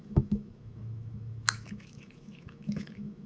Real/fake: fake